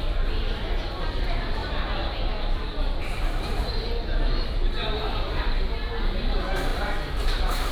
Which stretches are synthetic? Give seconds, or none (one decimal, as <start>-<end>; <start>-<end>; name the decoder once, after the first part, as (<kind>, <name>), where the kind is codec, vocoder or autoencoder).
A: none